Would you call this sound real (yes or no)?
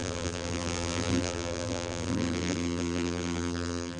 no